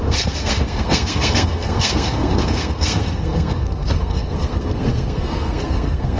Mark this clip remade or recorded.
remade